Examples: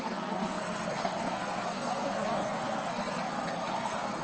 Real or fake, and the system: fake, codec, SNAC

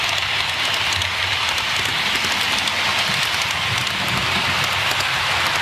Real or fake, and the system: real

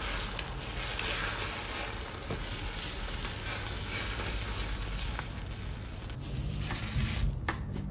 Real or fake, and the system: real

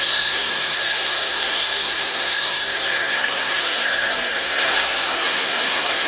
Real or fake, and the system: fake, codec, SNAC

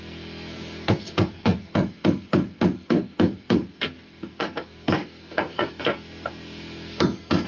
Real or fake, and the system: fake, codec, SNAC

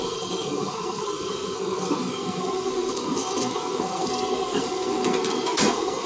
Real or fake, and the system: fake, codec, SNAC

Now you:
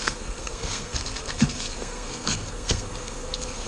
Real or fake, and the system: fake, codec, SNAC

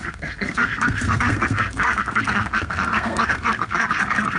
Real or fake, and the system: fake, codec, SNAC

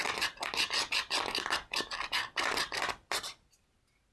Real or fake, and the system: real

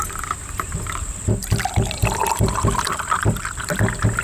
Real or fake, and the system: real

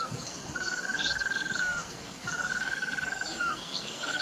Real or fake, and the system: fake, codec, SNAC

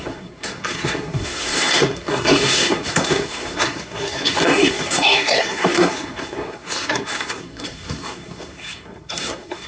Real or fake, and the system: fake, codec, SNAC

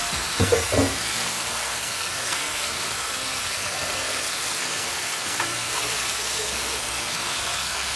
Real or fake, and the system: fake, codec, SNAC